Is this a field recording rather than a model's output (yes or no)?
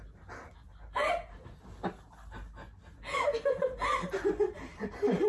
yes